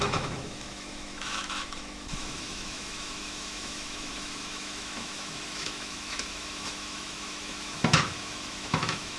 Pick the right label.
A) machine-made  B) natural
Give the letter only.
A